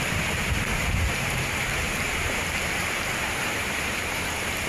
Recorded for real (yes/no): no